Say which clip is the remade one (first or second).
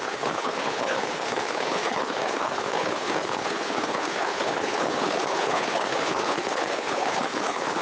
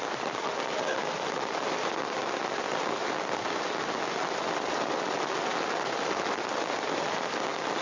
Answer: first